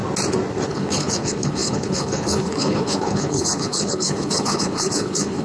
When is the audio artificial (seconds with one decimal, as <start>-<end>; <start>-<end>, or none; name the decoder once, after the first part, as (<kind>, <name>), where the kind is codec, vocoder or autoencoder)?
0.7-5.4 (codec, HILCodec)